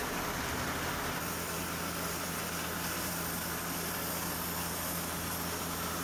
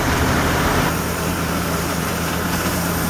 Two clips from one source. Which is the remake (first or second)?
second